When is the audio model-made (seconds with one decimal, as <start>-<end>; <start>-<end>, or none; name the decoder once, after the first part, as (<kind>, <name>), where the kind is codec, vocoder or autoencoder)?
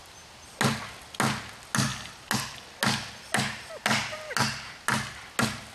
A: none